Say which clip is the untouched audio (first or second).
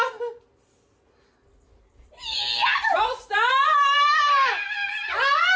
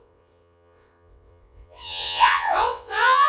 first